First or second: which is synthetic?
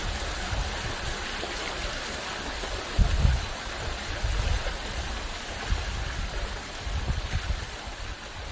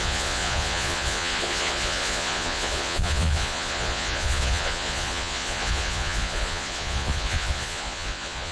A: second